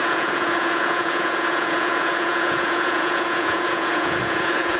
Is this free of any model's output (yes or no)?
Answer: no